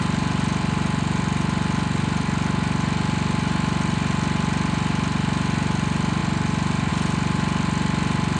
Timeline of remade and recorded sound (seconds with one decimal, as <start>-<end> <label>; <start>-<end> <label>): 0.0-8.4 recorded